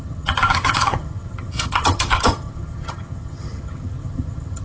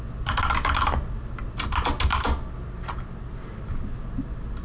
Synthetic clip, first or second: first